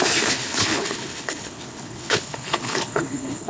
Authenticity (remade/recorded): remade